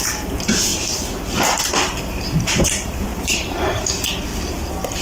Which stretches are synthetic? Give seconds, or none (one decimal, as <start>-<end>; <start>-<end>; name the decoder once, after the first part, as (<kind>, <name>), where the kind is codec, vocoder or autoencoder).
0.0-4.3 (vocoder, BigVGAN v2)